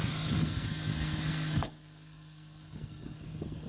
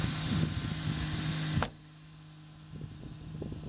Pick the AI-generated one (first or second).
first